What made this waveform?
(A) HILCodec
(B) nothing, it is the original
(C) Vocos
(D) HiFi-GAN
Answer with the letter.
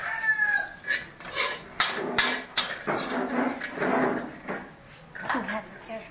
B